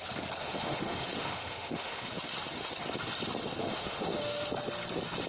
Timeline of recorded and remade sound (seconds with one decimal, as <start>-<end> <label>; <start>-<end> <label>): 0.0-0.4 recorded; 0.4-2.1 remade; 2.1-3.6 recorded; 3.6-4.5 remade; 4.5-5.3 recorded